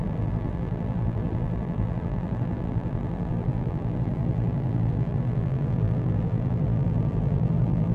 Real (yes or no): no